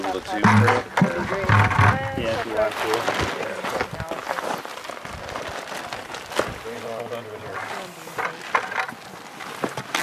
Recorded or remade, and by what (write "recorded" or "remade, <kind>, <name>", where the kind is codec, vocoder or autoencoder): recorded